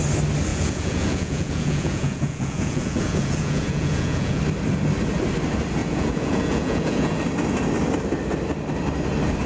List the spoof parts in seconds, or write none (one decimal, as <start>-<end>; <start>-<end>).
0.5-4.4; 5.8-7.2